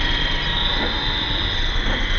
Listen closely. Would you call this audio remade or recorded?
recorded